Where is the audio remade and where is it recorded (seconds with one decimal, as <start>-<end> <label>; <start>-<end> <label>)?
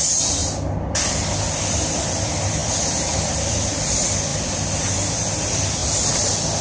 0.0-0.4 remade; 0.4-1.7 recorded; 1.7-6.6 remade